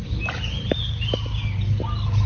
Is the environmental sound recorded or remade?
recorded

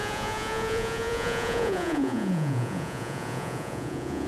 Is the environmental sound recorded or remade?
remade